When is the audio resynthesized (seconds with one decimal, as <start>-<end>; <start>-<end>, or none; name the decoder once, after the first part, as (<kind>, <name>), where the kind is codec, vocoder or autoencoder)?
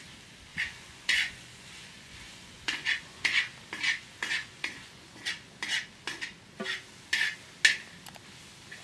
0.5-3.4 (vocoder, Vocos); 4.0-5.2